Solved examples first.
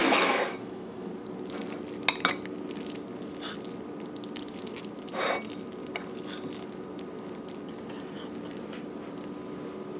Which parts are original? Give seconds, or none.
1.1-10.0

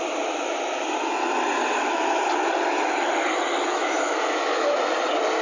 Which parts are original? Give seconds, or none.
0.0-1.6; 2.2-3.7; 4.8-5.4